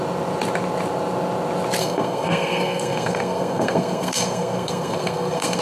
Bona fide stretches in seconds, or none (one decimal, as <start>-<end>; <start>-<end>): 0.0-1.8